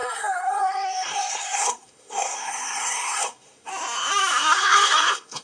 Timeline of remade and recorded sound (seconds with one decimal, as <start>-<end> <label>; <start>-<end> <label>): 0.0-3.7 remade; 3.7-4.4 recorded; 4.4-5.4 remade